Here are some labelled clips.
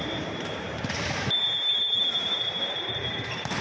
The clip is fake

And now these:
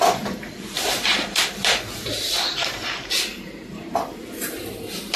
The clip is fake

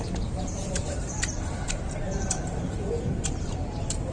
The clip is fake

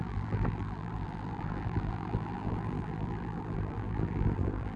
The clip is fake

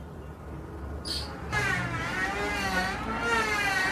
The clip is real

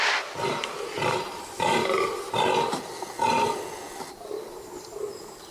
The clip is real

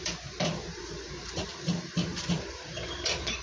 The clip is fake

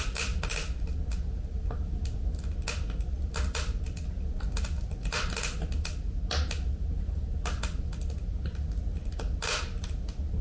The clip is real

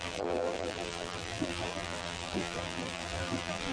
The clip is fake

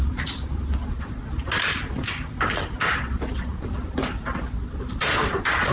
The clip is fake